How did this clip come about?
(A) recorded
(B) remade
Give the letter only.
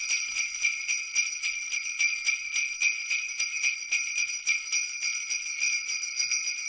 A